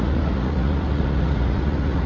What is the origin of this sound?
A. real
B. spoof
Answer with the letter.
B